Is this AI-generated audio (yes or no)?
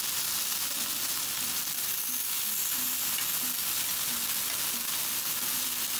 no